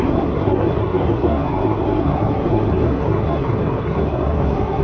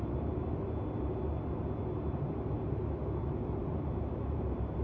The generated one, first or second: first